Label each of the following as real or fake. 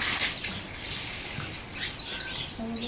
real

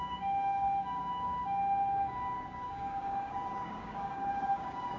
fake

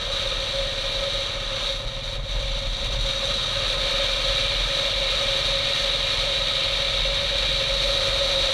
real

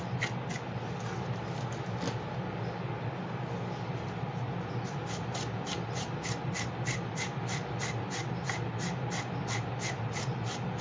real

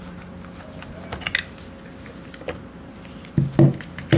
real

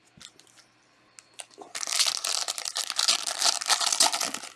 real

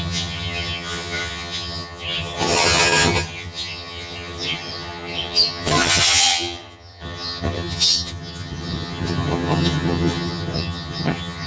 fake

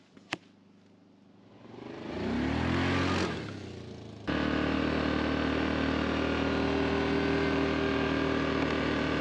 real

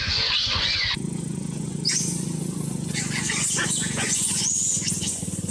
fake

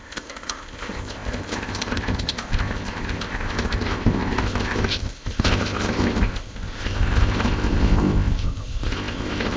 fake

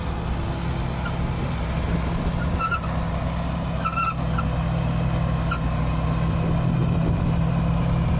real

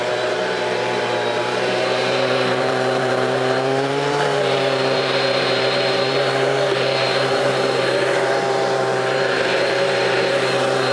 fake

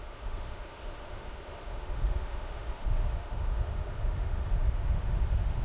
fake